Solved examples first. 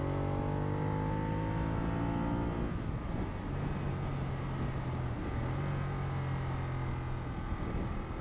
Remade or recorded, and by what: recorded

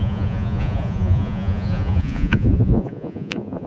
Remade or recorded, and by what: remade, vocoder, Vocos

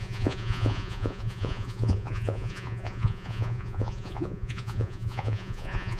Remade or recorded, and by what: remade, vocoder, Vocos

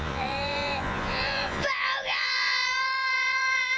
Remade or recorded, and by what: remade, vocoder, Vocos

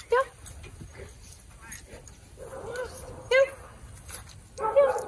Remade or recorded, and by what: recorded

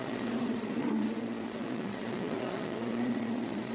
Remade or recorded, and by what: remade, vocoder, Vocos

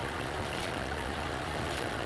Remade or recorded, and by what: remade, vocoder, Vocos